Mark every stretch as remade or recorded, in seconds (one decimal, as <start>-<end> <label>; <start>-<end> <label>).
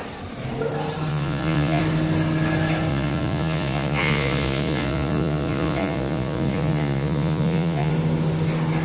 0.0-1.1 recorded; 1.1-1.8 remade; 1.8-2.9 recorded; 2.9-7.9 remade; 7.9-8.8 recorded